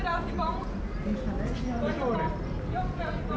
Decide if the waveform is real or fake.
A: real